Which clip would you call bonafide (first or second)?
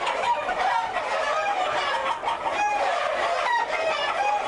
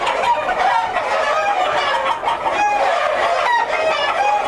second